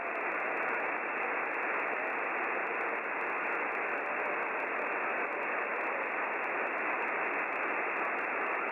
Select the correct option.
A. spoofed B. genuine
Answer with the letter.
B